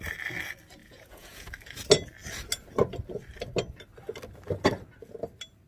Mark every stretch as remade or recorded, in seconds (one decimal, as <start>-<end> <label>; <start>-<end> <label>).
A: 0.0-0.8 recorded; 0.8-1.5 remade; 1.5-5.7 recorded